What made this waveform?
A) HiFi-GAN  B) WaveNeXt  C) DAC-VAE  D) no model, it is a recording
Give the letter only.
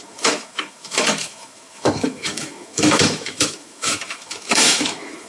C